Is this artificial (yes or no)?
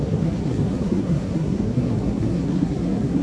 yes